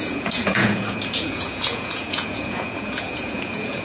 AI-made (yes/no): yes